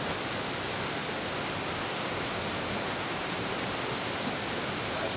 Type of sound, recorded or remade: recorded